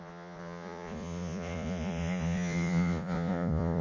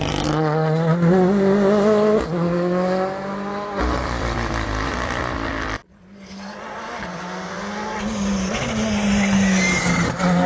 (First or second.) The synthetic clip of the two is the first